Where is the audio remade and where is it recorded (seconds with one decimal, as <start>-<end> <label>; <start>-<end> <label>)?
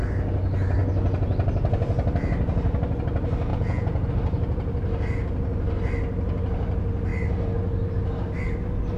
0.0-3.5 recorded; 3.5-4.1 remade; 4.1-9.0 recorded